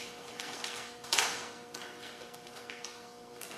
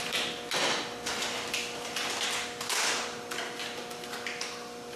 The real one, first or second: second